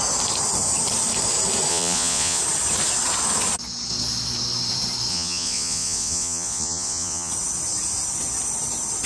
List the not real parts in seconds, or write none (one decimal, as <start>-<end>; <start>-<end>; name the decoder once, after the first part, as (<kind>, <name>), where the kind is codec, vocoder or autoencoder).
1.7-2.4 (vocoder, Vocos); 5.1-7.3